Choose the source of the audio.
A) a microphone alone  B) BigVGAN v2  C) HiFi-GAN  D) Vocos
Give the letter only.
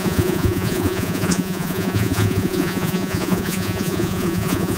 D